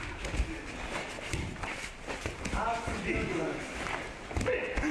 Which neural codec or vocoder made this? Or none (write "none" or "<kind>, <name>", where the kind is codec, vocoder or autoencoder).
none